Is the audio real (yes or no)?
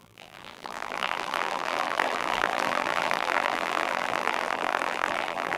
no